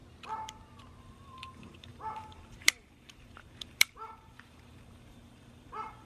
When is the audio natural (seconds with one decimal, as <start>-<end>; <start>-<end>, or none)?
0.0-1.0